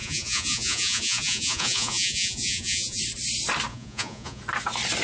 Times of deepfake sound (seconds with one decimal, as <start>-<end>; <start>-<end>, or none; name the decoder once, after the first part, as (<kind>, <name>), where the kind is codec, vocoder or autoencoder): 0.0-3.0 (vocoder, Vocos); 3.7-4.4